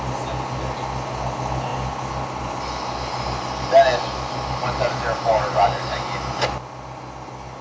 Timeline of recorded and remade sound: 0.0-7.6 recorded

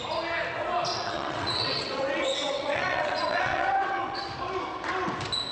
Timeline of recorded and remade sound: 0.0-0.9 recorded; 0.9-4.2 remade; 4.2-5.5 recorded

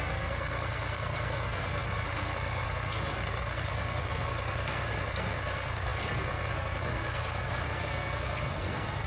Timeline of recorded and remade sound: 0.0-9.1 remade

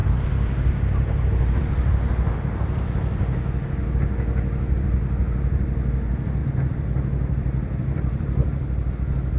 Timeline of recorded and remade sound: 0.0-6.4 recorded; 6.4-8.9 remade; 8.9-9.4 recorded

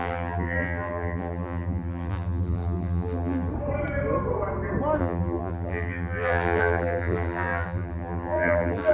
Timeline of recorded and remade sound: 0.0-3.5 remade; 3.5-5.0 recorded; 5.0-8.9 remade

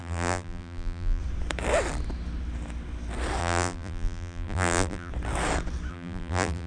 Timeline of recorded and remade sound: 0.0-1.2 remade; 1.2-3.4 recorded; 3.4-5.1 remade; 5.1-5.9 recorded; 5.9-6.7 remade

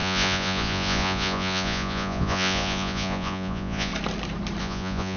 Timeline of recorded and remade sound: 0.0-3.9 remade; 3.9-4.6 recorded; 4.6-5.2 remade